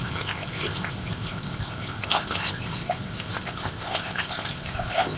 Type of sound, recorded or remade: remade